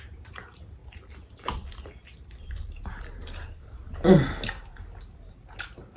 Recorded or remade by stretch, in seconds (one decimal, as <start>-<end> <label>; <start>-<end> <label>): 0.0-0.8 remade; 0.8-2.4 recorded; 2.4-3.8 remade; 3.8-4.5 recorded; 4.5-6.0 remade